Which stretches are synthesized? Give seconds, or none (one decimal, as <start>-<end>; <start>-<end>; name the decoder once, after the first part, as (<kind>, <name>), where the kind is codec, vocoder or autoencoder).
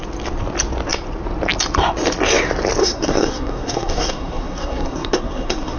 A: 2.8-5.8 (codec, SNAC)